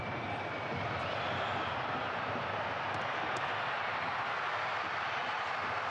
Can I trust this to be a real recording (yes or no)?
yes